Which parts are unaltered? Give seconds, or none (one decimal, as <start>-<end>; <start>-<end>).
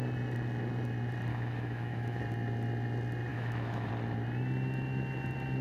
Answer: 0.0-1.3; 2.2-3.3; 3.9-5.6